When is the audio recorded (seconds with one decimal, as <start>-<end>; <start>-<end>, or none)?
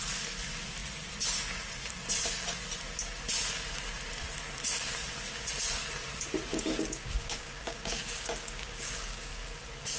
0.0-6.5; 9.6-10.0